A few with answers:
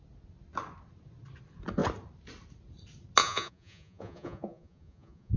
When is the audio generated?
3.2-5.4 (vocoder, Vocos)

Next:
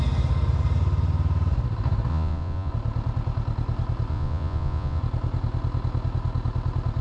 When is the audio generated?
2.1-2.7 (vocoder, Vocos); 4.1-5.0

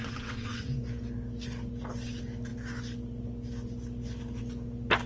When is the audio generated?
0.0-0.7 (vocoder, WaveNeXt)

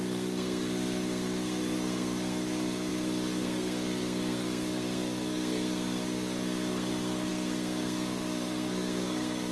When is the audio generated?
0.0-9.5 (codec, SNAC)

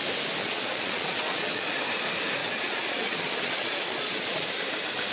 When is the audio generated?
0.4-1.8 (vocoder, Vocos); 2.4-4.5

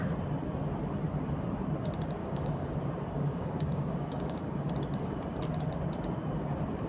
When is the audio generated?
2.2-2.7 (codec, DAC); 3.1-4.7

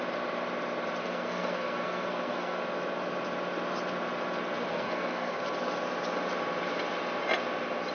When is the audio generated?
1.0-2.6 (codec, SNAC); 4.7-5.4

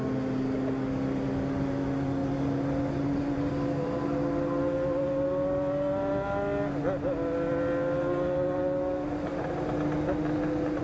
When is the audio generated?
none